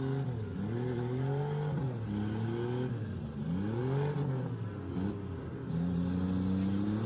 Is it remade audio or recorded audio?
recorded